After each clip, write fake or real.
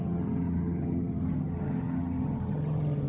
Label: fake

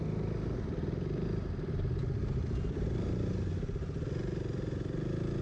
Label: real